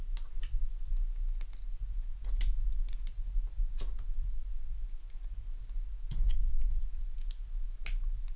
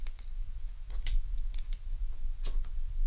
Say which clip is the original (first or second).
first